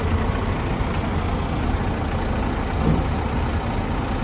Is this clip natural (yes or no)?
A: yes